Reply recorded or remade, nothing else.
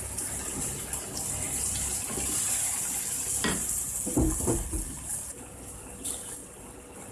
recorded